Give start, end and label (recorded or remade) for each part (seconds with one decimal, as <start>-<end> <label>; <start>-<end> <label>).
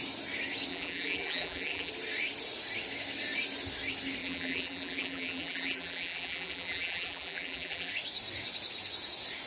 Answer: 0.0-0.7 recorded; 0.7-1.9 remade; 1.9-4.2 recorded; 4.2-7.9 remade; 7.9-9.5 recorded